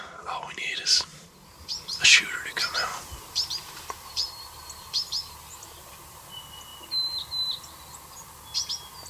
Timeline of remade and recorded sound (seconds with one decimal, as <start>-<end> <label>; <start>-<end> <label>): 0.0-1.1 recorded; 1.1-6.3 remade; 6.3-9.1 recorded

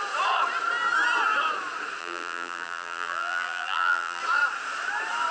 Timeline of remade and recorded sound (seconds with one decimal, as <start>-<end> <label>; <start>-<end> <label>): 0.0-2.0 recorded; 2.0-4.2 remade; 4.2-5.3 recorded

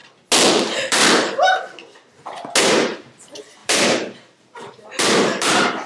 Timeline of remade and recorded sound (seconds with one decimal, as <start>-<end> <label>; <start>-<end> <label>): 0.0-0.5 recorded; 0.5-1.0 remade; 1.0-2.6 recorded; 2.6-5.9 remade

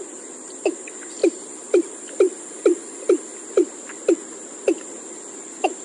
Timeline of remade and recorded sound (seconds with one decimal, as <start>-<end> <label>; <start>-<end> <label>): 0.0-1.2 recorded; 1.2-3.0 remade; 3.0-5.8 recorded